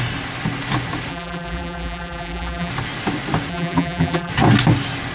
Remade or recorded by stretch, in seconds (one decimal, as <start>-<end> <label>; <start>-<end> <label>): 0.0-1.1 recorded; 1.1-2.7 remade; 2.7-3.5 recorded; 3.5-4.3 remade; 4.3-5.1 recorded